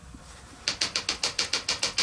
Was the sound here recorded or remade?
recorded